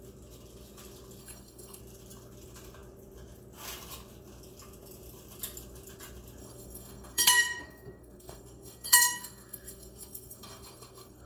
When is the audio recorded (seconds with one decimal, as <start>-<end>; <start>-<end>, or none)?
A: 0.0-1.2; 1.8-6.4